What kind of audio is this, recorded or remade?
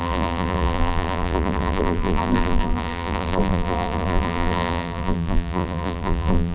remade